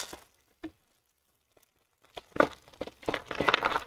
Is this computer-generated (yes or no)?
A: no